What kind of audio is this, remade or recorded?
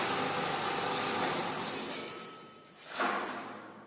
recorded